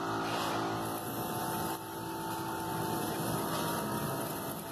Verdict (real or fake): real